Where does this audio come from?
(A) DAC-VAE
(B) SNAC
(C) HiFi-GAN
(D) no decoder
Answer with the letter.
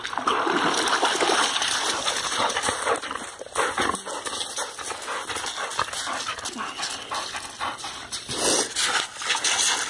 D